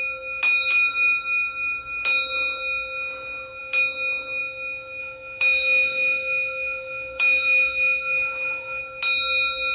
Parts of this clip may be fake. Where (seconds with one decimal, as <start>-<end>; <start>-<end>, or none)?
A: 5.0-8.8